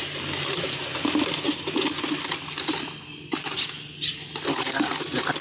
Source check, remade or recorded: recorded